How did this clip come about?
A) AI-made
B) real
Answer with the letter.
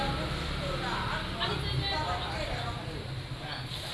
B